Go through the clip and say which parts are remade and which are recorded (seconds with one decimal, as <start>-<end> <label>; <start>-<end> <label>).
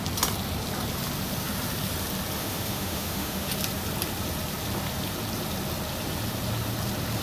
0.0-2.4 recorded; 2.4-3.5 remade; 3.5-7.2 recorded